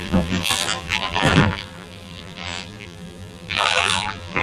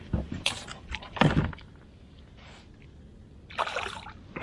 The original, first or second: second